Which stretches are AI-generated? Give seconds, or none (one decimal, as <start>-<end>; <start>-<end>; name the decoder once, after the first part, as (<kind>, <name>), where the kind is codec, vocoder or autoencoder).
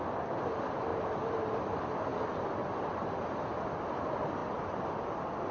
none